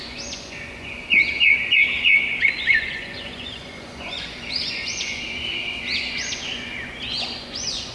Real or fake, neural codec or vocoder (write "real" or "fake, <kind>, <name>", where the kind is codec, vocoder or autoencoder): fake, vocoder, Vocos